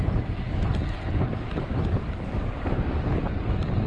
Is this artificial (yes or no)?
no